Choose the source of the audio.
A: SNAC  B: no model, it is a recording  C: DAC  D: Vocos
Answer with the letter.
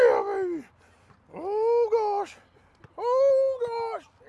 B